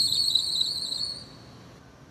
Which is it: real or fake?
real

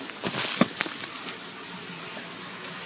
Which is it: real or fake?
real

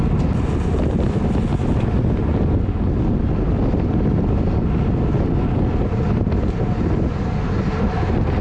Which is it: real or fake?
real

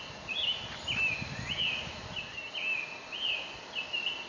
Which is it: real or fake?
real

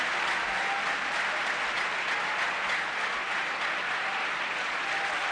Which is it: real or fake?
real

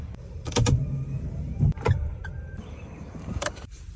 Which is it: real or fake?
fake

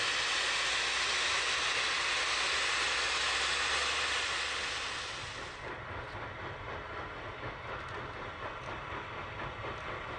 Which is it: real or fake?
real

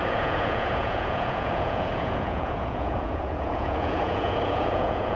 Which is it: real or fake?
fake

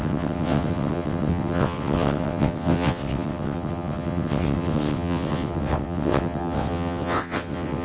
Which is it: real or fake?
fake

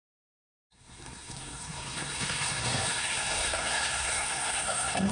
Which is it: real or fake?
fake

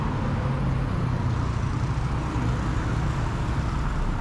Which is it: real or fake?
real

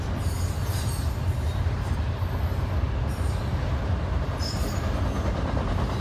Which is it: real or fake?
real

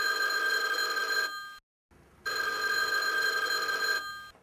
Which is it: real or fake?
real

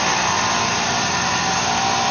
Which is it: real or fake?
real